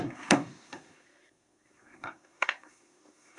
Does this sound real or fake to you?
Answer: fake